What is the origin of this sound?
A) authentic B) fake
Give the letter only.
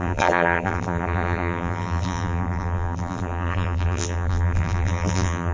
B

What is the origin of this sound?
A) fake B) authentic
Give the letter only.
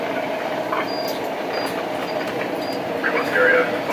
A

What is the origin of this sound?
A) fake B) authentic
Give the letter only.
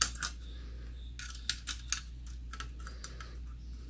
B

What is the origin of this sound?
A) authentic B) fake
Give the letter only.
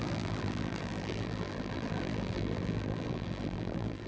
B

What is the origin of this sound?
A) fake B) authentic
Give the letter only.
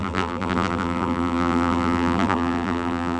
A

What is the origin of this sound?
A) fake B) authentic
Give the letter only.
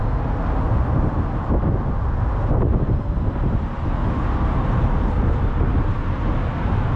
B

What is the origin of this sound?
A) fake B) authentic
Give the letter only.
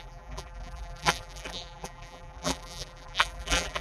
A